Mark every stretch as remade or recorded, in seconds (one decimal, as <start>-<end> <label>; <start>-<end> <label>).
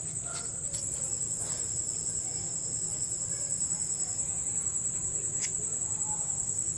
0.0-6.8 recorded